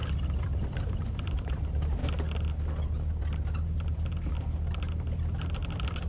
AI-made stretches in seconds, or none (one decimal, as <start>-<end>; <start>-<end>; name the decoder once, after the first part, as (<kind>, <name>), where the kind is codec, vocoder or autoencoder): 0.8-2.0 (vocoder, BigVGAN v2)